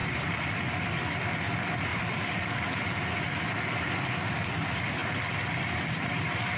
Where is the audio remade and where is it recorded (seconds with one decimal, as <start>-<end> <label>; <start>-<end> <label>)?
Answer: 0.0-0.5 remade; 0.5-1.9 recorded; 1.9-2.4 remade; 2.4-6.6 recorded